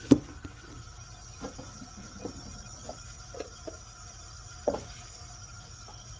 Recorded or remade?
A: recorded